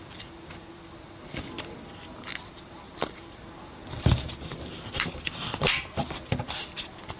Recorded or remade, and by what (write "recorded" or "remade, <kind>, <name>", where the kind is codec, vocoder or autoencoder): remade, vocoder, BigVGAN v2